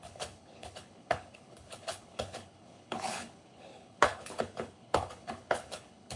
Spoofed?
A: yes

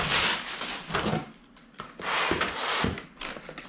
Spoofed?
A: no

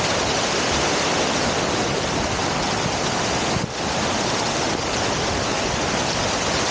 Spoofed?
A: no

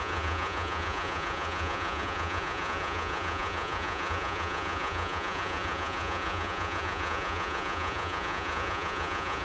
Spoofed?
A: yes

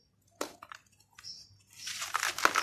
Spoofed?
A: no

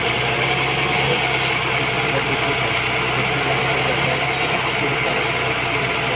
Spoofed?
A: no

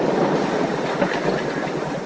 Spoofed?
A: no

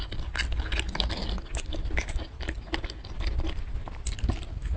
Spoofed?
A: no